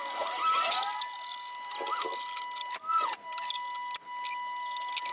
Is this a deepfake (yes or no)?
no